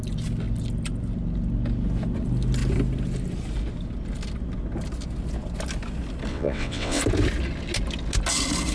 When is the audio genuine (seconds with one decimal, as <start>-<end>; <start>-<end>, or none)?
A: 0.0-6.3; 7.0-8.7